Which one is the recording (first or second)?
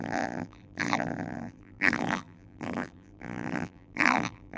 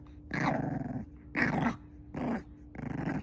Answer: second